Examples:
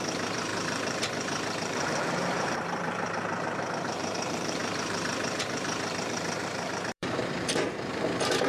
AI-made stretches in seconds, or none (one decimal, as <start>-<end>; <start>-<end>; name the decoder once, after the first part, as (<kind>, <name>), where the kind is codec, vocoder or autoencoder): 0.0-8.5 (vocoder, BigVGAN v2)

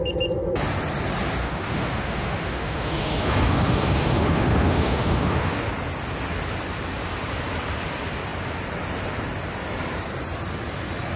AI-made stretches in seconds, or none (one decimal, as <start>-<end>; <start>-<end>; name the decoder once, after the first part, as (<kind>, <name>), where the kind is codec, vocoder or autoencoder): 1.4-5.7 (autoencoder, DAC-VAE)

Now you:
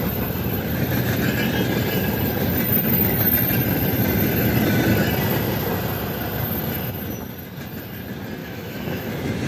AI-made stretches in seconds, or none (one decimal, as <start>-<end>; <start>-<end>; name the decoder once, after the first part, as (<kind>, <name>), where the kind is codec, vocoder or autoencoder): 8.4-9.1 (autoencoder, DAC-VAE)